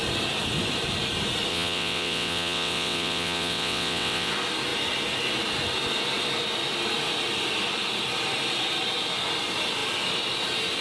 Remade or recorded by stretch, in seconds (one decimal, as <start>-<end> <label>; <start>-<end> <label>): 0.0-1.5 recorded; 1.5-4.3 remade; 4.3-10.8 recorded